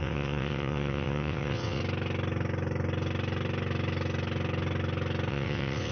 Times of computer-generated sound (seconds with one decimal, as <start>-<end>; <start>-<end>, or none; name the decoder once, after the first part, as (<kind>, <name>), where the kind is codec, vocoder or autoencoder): 0.0-1.8 (vocoder, WaveNeXt); 5.3-5.9